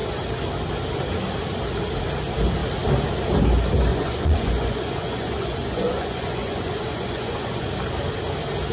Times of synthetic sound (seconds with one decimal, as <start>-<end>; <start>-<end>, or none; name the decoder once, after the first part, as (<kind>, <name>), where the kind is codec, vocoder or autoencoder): 3.9-7.7 (vocoder, Vocos)